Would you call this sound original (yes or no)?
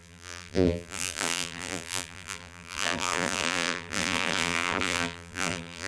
no